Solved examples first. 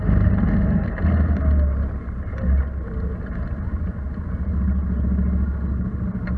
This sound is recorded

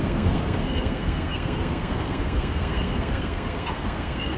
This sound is remade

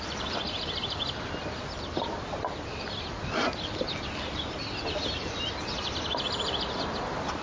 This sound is recorded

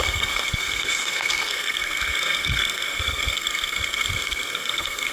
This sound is remade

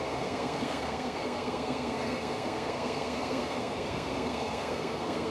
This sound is remade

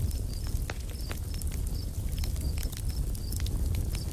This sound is recorded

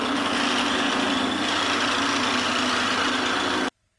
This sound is recorded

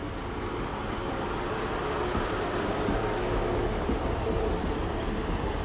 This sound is recorded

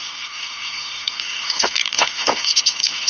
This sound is remade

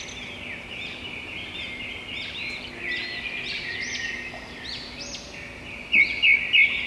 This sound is recorded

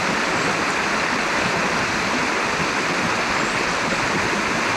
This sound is recorded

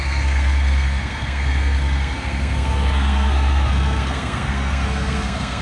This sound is remade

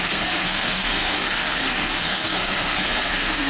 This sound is remade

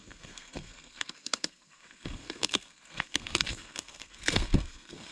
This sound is remade